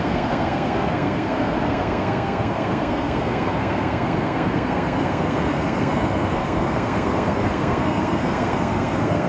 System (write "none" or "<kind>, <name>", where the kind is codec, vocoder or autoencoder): codec, SNAC